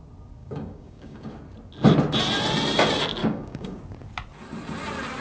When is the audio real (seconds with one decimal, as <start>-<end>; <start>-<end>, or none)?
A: 0.0-0.4; 1.3-3.2; 3.8-5.2